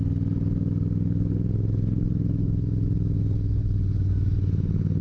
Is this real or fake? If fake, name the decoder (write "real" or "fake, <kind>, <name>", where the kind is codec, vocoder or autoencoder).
fake, autoencoder, DAC-VAE